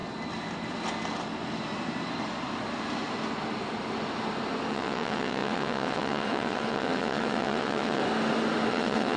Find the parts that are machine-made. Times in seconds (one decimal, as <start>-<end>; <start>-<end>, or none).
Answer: 4.7-8.0; 8.7-9.2